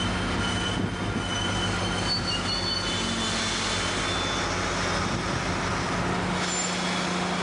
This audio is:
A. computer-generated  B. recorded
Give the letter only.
B